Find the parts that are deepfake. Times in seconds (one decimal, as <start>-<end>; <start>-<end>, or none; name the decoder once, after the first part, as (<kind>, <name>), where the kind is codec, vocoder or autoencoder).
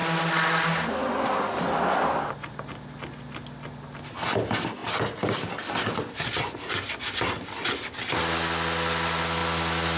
none